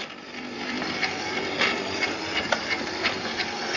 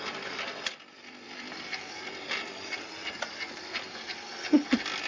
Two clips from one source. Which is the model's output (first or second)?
first